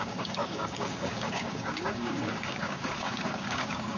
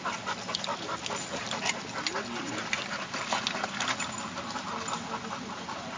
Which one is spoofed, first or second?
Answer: first